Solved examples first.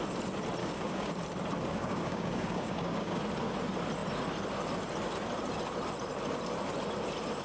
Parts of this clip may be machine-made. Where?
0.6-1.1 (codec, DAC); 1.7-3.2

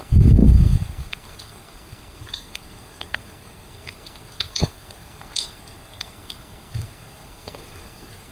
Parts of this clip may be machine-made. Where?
0.0-8.3 (codec, SNAC)

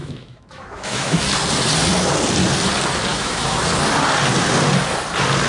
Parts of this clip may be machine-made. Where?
0.0-1.2 (autoencoder, DAC-VAE); 3.1-3.6

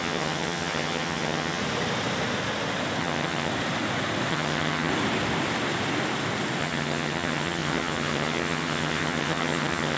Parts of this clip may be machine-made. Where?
0.0-1.6 (vocoder, HiFi-GAN); 3.0-3.5; 4.3-4.9; 6.6-10.0

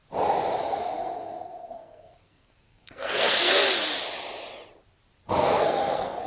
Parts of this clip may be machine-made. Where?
0.6-3.6 (codec, SNAC); 5.3-6.3